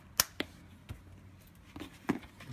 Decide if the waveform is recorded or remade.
recorded